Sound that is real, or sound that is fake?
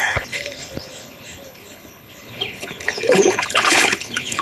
fake